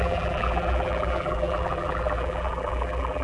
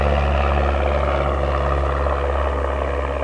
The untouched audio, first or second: second